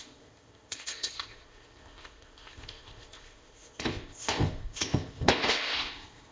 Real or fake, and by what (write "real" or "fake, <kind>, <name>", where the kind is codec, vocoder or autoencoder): fake, codec, ZipCodec